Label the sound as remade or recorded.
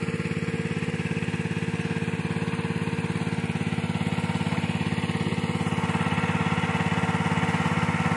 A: recorded